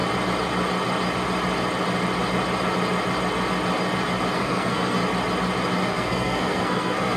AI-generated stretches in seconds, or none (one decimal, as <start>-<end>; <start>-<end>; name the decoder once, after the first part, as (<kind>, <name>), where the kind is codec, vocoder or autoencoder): 4.3-5.0 (codec, SNAC); 5.8-7.2